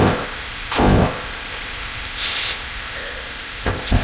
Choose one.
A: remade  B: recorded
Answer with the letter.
A